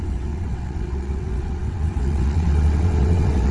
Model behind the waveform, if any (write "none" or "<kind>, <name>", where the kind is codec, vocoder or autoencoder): vocoder, WaveNeXt